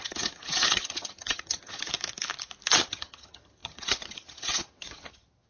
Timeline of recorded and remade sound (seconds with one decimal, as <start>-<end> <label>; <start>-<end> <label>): 0.0-1.9 remade; 1.9-2.8 recorded; 2.8-5.5 remade